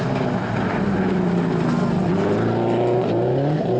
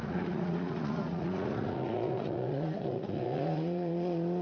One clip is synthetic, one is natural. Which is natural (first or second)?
first